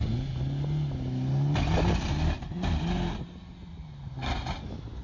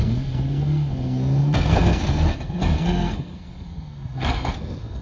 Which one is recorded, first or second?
first